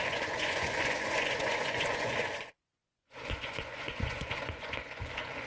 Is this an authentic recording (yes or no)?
no